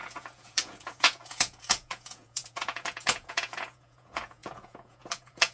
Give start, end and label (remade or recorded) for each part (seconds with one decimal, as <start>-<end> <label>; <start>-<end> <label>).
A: 0.0-5.5 remade